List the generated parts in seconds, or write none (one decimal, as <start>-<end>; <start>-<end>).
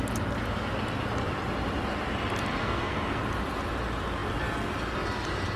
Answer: 2.6-3.2